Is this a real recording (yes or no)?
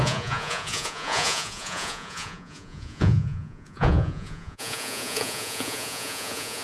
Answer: no